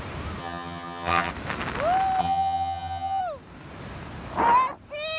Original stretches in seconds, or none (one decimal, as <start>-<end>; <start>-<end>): 0.0-0.4; 1.3-2.2; 3.2-5.2

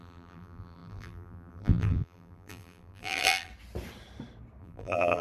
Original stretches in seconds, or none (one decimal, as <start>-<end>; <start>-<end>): 3.5-4.6